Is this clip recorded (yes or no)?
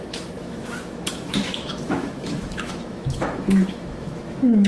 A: no